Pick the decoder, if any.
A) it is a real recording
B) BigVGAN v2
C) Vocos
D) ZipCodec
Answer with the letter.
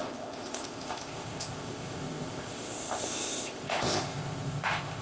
D